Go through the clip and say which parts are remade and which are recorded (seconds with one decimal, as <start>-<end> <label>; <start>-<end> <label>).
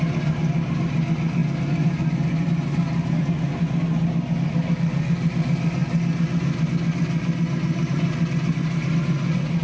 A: 0.0-9.6 recorded